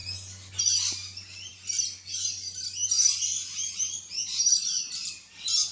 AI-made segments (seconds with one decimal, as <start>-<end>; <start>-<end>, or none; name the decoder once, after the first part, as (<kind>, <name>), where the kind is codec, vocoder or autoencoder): none